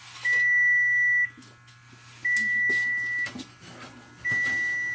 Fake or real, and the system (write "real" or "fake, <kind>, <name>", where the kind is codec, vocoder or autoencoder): real